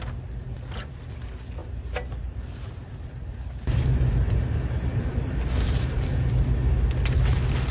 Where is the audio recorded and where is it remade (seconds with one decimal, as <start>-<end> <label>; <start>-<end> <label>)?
0.0-1.6 recorded; 1.6-6.2 remade; 6.2-7.7 recorded